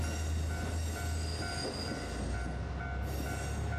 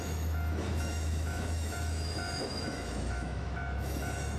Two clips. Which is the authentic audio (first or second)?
first